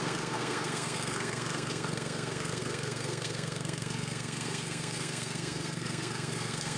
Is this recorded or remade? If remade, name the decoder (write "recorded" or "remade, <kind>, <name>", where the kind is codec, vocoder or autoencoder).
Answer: remade, codec, SNAC